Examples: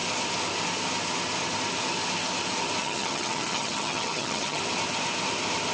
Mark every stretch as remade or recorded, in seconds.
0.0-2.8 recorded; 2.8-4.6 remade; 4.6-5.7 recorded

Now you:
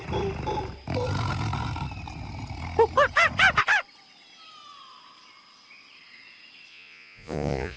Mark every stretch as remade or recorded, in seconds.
0.0-6.7 recorded; 6.7-7.8 remade

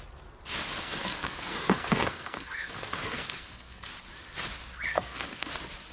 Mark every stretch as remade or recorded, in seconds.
0.0-0.8 recorded; 0.8-3.9 remade; 3.9-4.9 recorded; 4.9-5.5 remade; 5.5-5.9 recorded

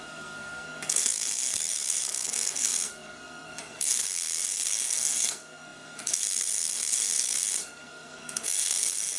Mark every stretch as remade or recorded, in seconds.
0.0-9.2 remade

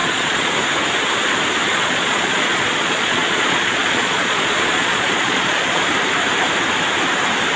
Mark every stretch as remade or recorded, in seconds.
0.0-0.5 remade; 0.5-1.7 recorded; 1.7-5.9 remade; 5.9-7.6 recorded

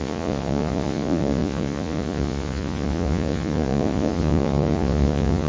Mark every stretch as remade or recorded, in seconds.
0.0-5.5 remade

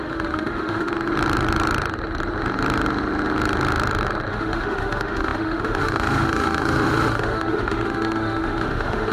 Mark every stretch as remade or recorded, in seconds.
0.0-0.9 remade; 0.9-4.3 recorded; 4.3-9.1 remade

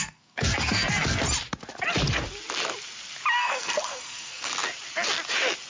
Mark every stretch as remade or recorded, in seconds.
0.0-1.2 remade; 1.2-3.3 recorded; 3.3-4.5 remade; 4.5-5.7 recorded